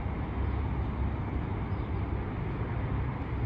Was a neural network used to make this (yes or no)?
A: no